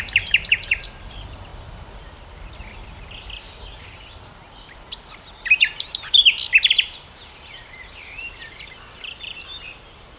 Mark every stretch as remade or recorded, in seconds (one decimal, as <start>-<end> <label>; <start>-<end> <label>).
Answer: 0.0-1.5 remade; 1.5-6.7 recorded; 6.7-10.2 remade